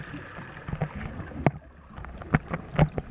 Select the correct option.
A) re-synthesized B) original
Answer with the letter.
B